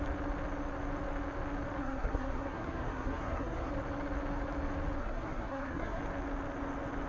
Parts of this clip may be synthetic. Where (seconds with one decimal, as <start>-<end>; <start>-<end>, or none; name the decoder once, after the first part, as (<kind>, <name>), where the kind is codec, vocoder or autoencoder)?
1.8-3.7 (codec, SNAC); 5.0-6.0